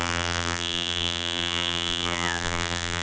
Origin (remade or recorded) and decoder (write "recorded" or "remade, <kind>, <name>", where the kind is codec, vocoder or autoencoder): remade, vocoder, BigVGAN v2